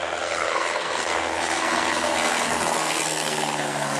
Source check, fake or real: fake